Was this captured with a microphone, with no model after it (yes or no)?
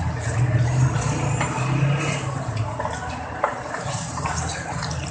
yes